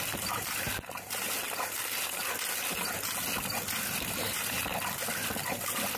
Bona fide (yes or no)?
yes